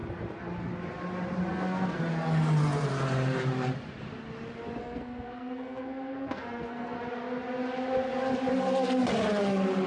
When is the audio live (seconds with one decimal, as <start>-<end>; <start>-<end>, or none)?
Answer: 0.0-1.5; 2.0-4.8; 7.0-9.9